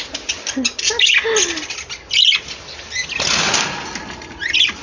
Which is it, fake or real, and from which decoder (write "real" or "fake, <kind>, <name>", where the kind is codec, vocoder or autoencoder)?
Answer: real